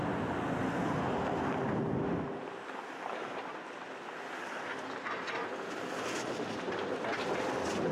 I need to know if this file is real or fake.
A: real